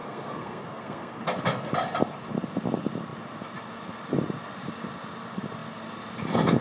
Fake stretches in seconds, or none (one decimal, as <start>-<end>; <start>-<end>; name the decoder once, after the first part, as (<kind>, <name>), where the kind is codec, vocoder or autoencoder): 0.0-1.2 (codec, SNAC)